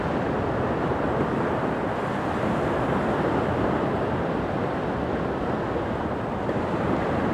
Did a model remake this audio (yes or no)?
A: no